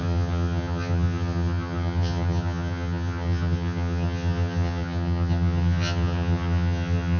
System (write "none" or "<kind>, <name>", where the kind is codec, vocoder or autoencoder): vocoder, HiFi-GAN